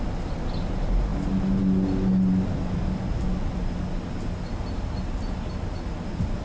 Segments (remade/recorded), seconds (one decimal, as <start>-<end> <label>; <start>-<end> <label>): 0.0-6.4 recorded